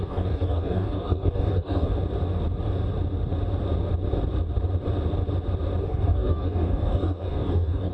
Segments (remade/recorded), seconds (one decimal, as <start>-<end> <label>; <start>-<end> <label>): 0.0-1.9 remade; 1.9-5.8 recorded; 5.8-7.9 remade